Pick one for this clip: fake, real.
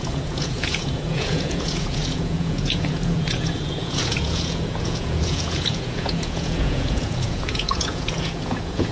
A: fake